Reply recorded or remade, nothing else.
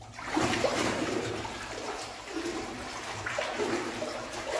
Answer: remade